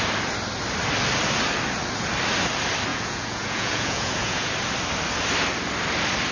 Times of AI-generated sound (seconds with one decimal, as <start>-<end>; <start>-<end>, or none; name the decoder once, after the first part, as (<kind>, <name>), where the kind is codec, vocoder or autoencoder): 2.9-4.5 (vocoder, Vocos)

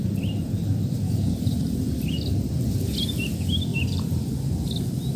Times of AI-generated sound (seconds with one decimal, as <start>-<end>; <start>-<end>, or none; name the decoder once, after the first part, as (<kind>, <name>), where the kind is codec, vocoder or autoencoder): 0.6-1.8 (vocoder, BigVGAN v2); 3.7-4.5

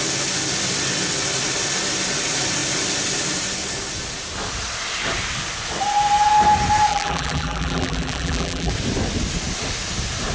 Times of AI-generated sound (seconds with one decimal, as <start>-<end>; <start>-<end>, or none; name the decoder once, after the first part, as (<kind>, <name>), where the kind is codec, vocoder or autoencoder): 6.9-8.7 (vocoder, BigVGAN v2)

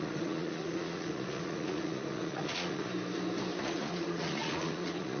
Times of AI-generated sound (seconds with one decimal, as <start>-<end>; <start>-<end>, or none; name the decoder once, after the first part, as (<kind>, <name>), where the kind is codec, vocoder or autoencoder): 0.0-2.9 (vocoder, Vocos); 3.6-5.2

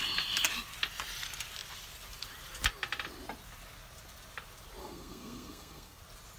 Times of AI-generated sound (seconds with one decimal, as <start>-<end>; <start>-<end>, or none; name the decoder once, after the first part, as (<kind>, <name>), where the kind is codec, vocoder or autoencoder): 4.8-6.0 (codec, SNAC)

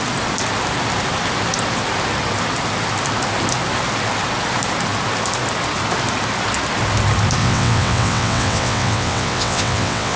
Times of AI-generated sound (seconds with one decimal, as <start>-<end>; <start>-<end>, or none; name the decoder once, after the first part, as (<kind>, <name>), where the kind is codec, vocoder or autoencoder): 7.4-10.2 (vocoder, WaveNeXt)

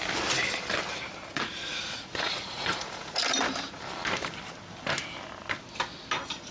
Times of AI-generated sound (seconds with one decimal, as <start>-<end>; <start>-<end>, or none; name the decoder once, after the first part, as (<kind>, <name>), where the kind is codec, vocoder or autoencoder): 1.3-3.2 (vocoder, Vocos)

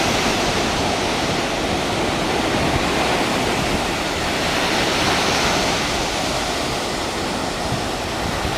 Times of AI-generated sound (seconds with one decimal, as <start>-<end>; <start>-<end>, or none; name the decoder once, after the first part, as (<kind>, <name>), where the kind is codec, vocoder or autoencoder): none